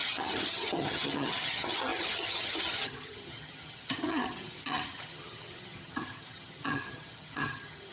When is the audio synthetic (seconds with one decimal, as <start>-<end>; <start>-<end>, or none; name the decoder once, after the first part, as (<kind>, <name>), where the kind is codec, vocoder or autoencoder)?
0.0-7.9 (vocoder, HiFi-GAN)